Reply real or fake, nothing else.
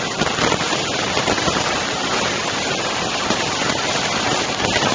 real